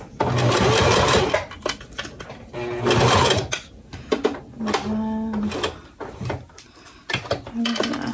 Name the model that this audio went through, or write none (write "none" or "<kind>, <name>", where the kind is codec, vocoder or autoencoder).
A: none